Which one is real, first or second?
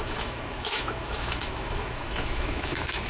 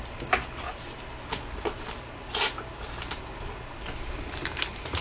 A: second